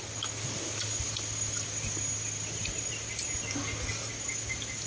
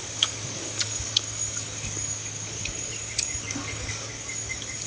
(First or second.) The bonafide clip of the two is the first